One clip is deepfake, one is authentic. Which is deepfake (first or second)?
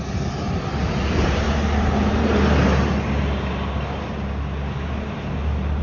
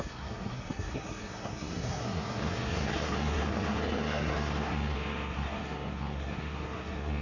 second